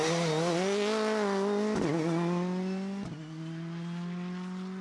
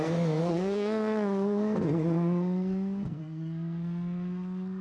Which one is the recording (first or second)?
first